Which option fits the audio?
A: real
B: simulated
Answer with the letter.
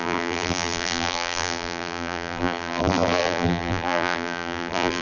B